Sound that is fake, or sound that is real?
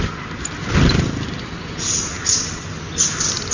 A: real